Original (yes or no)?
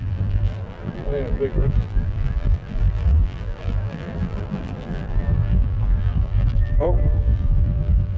no